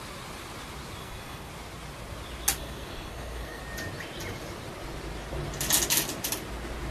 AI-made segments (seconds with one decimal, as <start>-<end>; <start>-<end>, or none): 1.0-1.5; 2.6-3.6